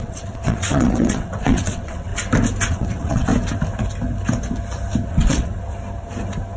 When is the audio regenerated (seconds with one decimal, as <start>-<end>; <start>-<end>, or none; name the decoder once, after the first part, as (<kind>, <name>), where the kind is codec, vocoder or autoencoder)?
0.0-2.1 (vocoder, WaveNeXt); 2.7-3.3; 5.1-5.5